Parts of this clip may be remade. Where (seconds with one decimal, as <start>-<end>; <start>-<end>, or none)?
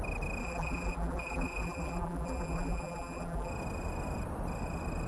0.4-3.5